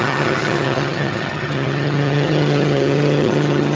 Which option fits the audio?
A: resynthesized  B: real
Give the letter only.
A